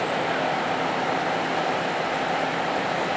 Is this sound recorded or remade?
recorded